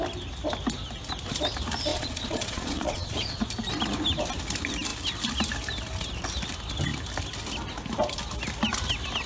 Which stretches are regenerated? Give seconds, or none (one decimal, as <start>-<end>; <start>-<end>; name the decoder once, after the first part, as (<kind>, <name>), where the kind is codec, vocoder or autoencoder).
1.9-3.3 (vocoder, Vocos)